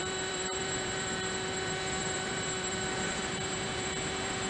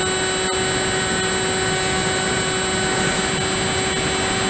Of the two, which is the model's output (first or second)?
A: first